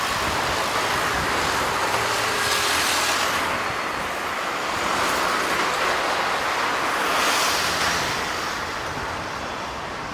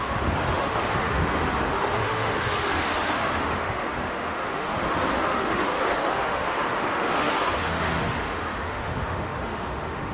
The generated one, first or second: second